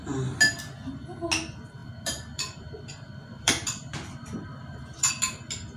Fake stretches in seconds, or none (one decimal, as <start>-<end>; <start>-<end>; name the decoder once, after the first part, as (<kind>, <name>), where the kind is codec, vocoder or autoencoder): 1.8-5.1 (vocoder, BigVGAN v2)